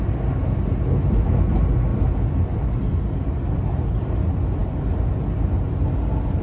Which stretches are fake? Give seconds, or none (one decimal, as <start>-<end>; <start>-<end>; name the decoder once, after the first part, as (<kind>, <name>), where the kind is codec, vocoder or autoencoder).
none